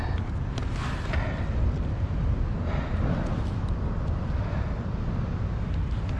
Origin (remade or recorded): recorded